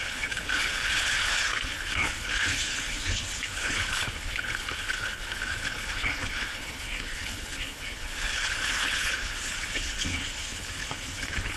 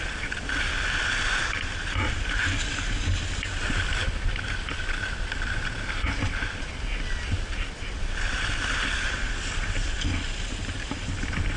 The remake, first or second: first